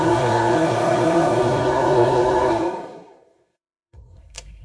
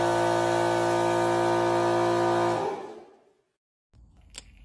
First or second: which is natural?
second